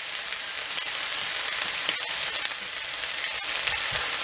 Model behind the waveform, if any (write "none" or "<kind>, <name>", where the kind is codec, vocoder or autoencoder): none